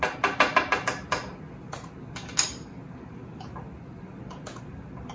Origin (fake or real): real